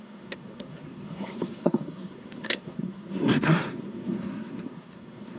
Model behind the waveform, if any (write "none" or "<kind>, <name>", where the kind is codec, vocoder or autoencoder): codec, SNAC